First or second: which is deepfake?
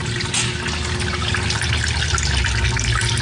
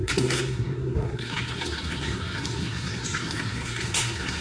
second